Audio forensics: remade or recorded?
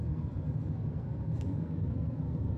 remade